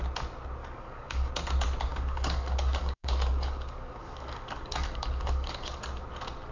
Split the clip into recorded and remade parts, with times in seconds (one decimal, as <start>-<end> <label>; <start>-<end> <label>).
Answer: 0.0-0.6 recorded; 0.6-1.3 remade; 1.3-1.9 recorded; 1.9-5.8 remade; 5.8-6.5 recorded